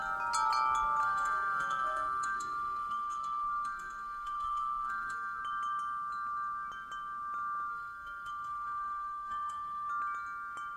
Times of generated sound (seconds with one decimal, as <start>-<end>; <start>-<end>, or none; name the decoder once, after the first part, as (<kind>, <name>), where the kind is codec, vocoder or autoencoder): 1.0-5.4 (codec, SNAC); 7.7-9.9